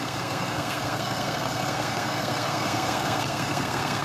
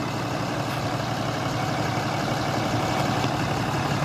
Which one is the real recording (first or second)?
second